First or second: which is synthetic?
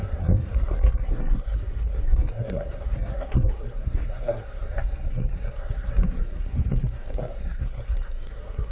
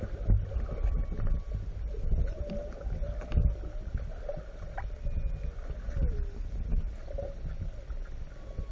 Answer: first